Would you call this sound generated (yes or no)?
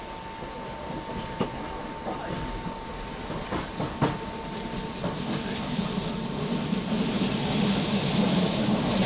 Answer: no